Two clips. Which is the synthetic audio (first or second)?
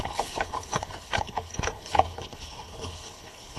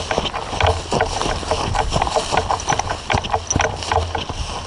first